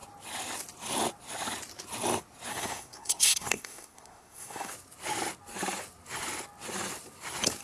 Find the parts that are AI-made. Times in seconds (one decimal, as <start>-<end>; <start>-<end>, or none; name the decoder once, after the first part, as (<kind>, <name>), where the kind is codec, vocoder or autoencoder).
2.5-4.7 (codec, SNAC)